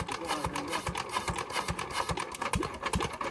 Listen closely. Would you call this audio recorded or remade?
recorded